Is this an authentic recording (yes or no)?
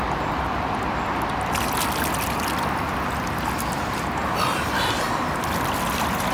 yes